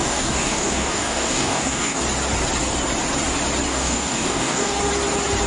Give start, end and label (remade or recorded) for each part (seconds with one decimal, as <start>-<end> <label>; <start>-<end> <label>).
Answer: 0.0-2.0 remade; 2.0-3.7 recorded; 3.7-4.8 remade; 4.8-5.5 recorded